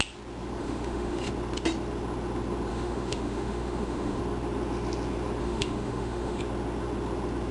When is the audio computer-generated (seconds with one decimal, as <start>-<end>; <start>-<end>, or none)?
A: 0.6-1.3; 2.7-4.2; 5.4-6.4